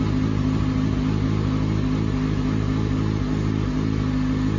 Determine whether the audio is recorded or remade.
recorded